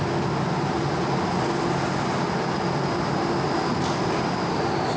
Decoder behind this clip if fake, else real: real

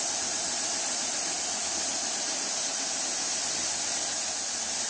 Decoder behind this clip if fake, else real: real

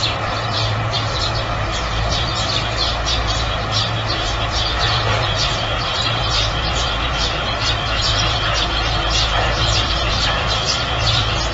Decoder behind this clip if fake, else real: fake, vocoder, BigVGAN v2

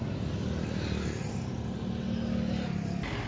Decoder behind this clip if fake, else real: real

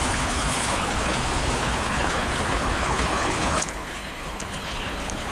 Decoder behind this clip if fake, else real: fake, codec, HILCodec